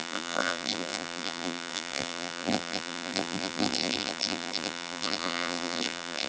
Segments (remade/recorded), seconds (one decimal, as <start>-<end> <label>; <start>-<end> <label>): 0.0-6.3 remade